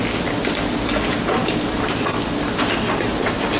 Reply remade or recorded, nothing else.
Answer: recorded